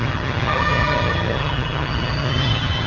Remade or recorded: remade